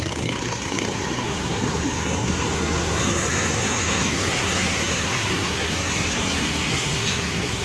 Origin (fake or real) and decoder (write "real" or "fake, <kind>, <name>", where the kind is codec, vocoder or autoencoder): fake, codec, SNAC